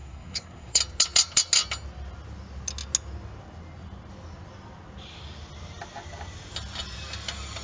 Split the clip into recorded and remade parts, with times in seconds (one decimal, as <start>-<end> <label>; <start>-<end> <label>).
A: 0.0-0.8 remade; 0.8-7.6 recorded